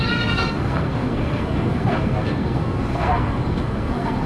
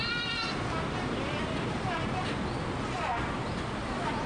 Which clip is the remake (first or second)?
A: first